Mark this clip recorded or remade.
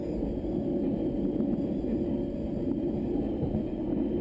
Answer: recorded